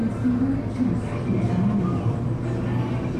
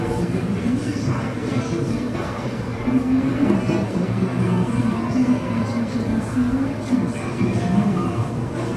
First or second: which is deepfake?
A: second